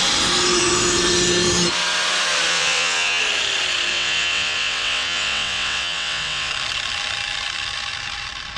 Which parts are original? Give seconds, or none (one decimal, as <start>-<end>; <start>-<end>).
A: 0.0-2.5; 3.2-3.9; 6.5-8.6